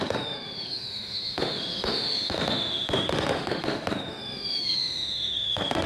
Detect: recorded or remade remade